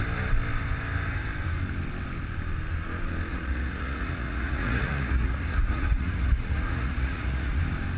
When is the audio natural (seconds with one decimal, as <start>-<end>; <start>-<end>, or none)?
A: 0.0-3.3; 7.6-8.0